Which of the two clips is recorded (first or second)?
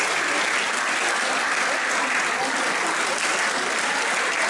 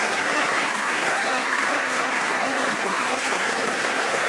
first